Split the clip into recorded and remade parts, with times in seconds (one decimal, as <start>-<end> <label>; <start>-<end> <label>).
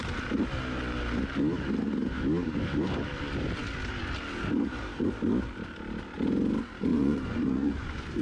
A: 0.0-6.9 recorded; 6.9-8.2 remade